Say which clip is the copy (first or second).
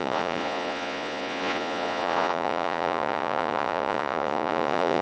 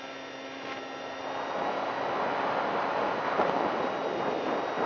first